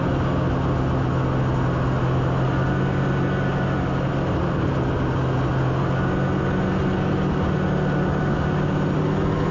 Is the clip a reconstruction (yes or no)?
no